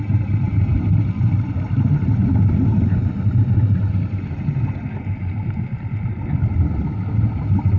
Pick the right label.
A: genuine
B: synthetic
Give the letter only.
A